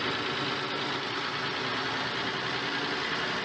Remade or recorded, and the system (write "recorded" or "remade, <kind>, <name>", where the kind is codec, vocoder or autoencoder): recorded